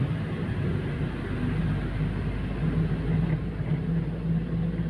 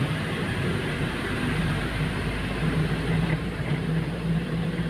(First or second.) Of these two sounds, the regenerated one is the second